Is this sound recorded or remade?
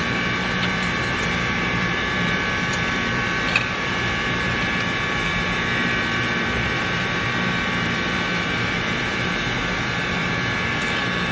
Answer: remade